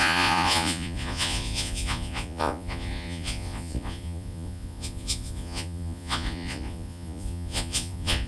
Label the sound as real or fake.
fake